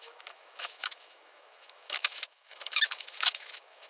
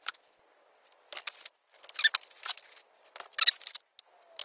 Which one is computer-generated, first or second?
first